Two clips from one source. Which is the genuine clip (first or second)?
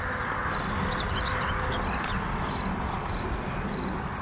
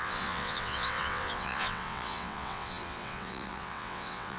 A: first